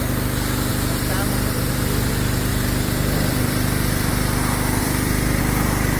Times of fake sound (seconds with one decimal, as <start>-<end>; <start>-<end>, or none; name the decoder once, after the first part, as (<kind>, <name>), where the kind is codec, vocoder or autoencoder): 0.7-2.1 (vocoder, BigVGAN v2); 2.5-4.1; 4.8-5.4